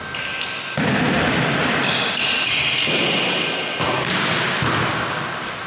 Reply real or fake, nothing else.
real